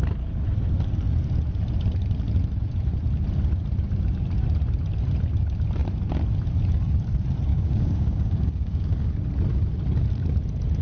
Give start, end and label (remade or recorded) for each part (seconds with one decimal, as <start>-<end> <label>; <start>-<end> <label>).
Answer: 0.0-7.5 recorded; 7.5-9.1 remade; 9.1-10.8 recorded